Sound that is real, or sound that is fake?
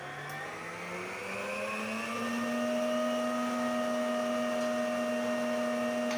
real